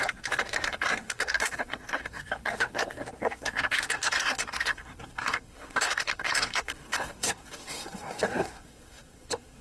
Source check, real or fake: fake